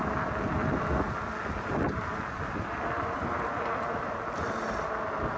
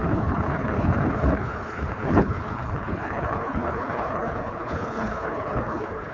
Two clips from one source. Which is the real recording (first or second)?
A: first